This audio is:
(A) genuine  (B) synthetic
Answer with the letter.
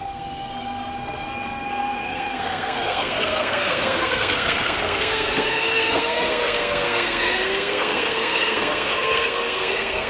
B